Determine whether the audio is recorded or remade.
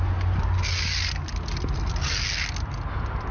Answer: recorded